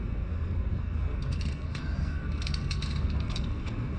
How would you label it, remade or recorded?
remade